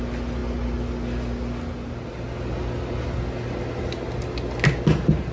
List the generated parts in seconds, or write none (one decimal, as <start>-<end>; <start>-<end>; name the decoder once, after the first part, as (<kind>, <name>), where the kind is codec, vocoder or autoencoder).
none